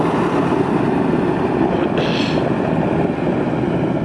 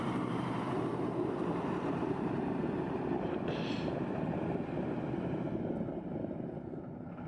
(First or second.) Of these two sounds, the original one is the first